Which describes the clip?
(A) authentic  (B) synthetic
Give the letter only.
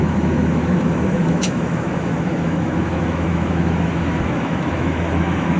B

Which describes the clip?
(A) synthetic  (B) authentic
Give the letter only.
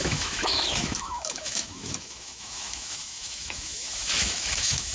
A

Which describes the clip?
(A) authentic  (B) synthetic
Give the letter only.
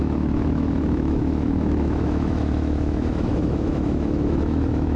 B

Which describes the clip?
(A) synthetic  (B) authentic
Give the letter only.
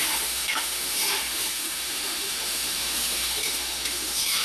A